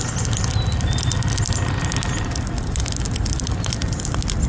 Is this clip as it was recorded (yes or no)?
yes